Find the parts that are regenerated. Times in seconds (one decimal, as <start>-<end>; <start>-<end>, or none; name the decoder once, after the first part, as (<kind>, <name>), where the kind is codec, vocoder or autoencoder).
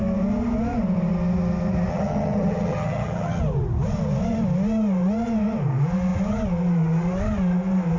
1.9-3.4 (vocoder, HiFi-GAN)